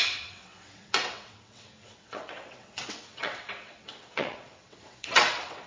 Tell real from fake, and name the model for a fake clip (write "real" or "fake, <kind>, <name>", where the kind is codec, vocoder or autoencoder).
fake, vocoder, WaveNeXt